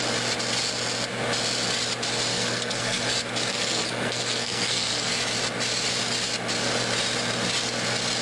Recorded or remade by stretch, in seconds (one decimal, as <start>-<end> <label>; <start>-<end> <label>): 0.0-2.3 recorded; 2.3-3.0 remade; 3.0-3.5 recorded; 3.5-5.1 remade; 5.1-8.2 recorded